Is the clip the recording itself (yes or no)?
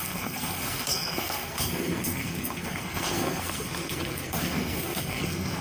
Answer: no